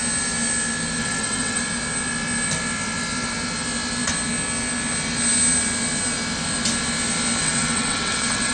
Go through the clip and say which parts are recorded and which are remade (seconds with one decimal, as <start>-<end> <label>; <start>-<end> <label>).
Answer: 0.0-1.0 recorded; 1.0-1.6 remade; 1.6-7.4 recorded; 7.4-8.5 remade

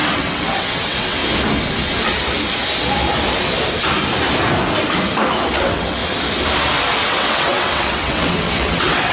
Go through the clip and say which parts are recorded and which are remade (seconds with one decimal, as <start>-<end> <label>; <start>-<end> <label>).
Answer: 0.0-1.2 remade; 1.2-5.5 recorded; 5.5-6.0 remade; 6.0-7.0 recorded; 7.0-9.1 remade